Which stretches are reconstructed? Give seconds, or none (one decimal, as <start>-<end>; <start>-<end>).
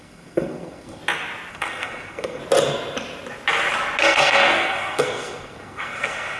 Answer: 0.0-1.0; 1.5-2.4; 4.0-6.4